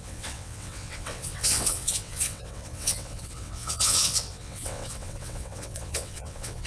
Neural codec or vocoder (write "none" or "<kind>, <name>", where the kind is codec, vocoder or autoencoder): vocoder, WaveNeXt